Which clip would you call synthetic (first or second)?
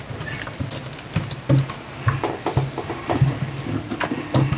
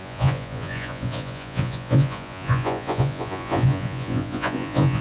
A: second